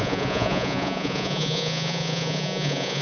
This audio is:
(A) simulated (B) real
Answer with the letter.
A